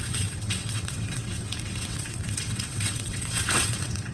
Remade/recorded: remade